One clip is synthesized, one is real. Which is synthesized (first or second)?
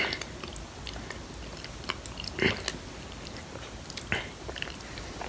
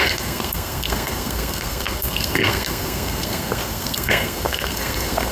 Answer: second